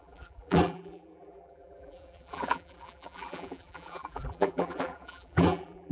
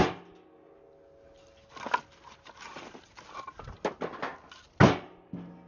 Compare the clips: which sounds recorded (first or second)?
second